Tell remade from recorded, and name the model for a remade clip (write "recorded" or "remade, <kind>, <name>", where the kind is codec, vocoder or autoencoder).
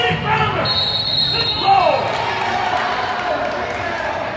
recorded